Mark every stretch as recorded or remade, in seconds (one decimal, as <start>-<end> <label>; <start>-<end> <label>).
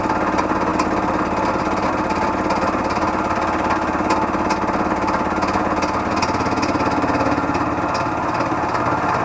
0.0-9.2 recorded